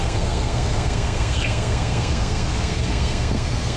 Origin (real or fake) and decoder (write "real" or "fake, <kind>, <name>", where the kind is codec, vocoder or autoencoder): fake, codec, SNAC